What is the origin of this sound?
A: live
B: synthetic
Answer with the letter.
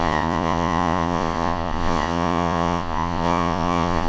B